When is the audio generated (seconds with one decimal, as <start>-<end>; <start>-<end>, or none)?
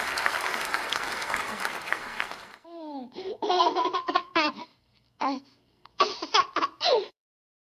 0.0-6.1; 6.8-7.6